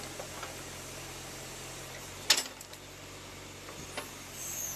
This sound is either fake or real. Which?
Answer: real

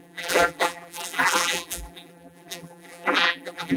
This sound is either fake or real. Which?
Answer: fake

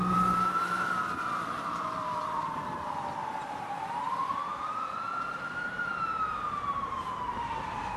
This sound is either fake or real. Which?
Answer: fake